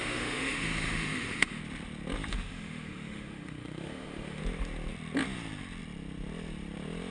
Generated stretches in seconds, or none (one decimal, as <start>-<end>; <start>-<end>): 0.0-1.6; 2.3-4.4